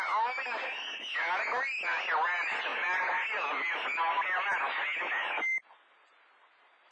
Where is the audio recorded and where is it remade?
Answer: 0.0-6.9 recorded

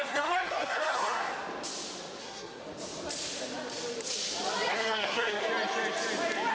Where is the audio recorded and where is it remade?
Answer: 0.0-1.3 remade; 1.3-2.2 recorded; 2.2-2.6 remade; 2.6-4.7 recorded; 4.7-5.4 remade; 5.4-6.5 recorded

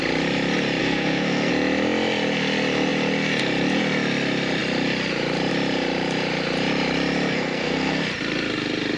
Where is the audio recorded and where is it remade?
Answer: 0.0-0.8 recorded; 0.8-1.5 remade; 1.5-7.3 recorded; 7.3-8.0 remade; 8.0-9.0 recorded